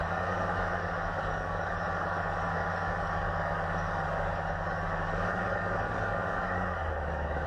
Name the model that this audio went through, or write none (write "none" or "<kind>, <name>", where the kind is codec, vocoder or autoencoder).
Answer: codec, DAC